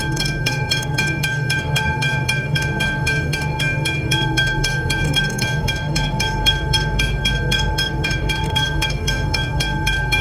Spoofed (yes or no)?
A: yes